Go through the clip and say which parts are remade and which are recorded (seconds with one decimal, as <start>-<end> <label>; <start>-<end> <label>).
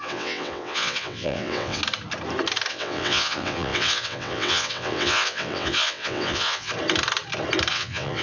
0.0-1.8 remade; 1.8-2.7 recorded; 2.7-6.7 remade; 6.7-7.7 recorded; 7.7-8.2 remade